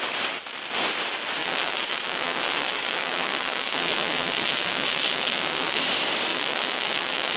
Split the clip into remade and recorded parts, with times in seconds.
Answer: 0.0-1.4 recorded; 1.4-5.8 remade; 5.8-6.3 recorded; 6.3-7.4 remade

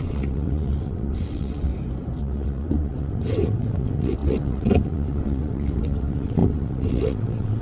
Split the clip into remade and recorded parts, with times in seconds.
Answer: 0.0-1.7 remade; 1.7-2.2 recorded; 2.2-7.6 remade

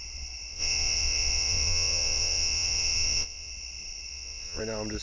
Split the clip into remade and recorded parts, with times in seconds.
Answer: 0.0-0.5 recorded; 0.5-3.5 remade; 3.5-4.1 recorded; 4.1-4.6 remade; 4.6-5.0 recorded

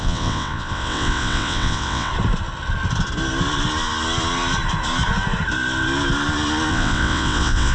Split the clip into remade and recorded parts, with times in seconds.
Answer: 0.0-2.1 remade; 2.1-6.7 recorded; 6.7-7.7 remade

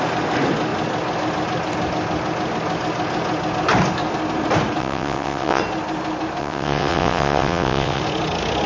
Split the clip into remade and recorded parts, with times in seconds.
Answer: 0.0-4.8 recorded; 4.8-5.6 remade; 5.6-6.4 recorded; 6.4-8.0 remade; 8.0-8.7 recorded